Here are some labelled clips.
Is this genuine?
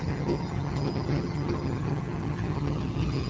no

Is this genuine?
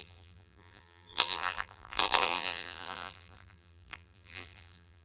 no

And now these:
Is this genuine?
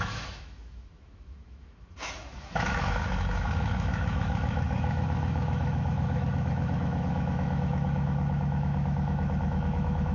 no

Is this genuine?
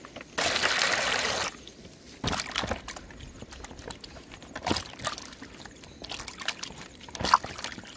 yes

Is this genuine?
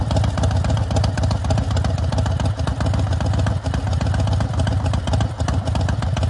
yes